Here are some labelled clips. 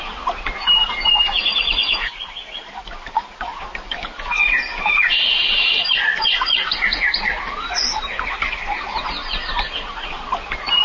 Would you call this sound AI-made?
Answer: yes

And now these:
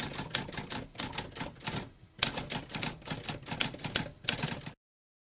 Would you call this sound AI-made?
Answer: no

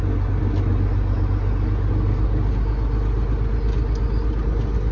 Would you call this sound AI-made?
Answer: no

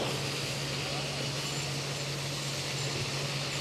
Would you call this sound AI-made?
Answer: no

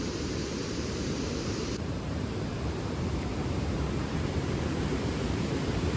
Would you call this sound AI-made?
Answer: yes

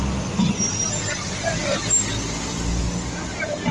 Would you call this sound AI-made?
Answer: no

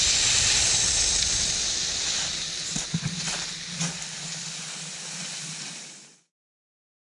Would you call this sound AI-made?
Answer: no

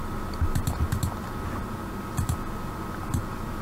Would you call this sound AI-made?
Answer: no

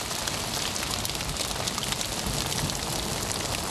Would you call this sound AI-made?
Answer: no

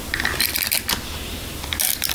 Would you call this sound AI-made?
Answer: no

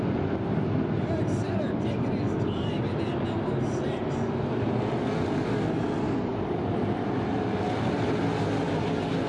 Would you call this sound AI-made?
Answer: yes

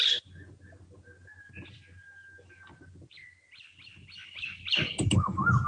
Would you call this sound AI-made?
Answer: no